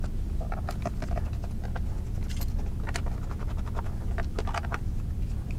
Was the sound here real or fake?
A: real